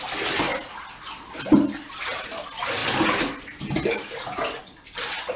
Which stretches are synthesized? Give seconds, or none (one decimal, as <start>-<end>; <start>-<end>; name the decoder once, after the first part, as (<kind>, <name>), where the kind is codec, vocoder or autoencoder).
none